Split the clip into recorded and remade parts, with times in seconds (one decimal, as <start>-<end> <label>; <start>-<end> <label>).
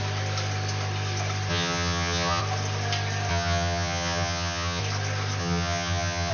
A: 0.0-1.5 recorded; 1.5-2.4 remade; 2.4-3.3 recorded; 3.3-4.8 remade; 4.8-5.4 recorded; 5.4-6.3 remade